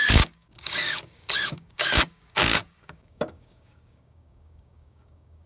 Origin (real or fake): fake